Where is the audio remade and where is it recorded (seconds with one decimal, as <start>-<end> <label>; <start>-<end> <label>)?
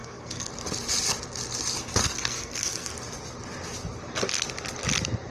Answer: 0.0-0.5 remade; 0.5-2.0 recorded; 2.0-2.9 remade; 2.9-5.3 recorded